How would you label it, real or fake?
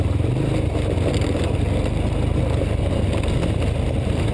real